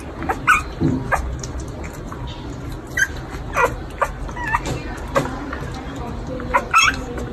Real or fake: real